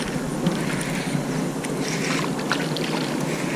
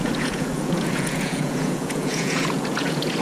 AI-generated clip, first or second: second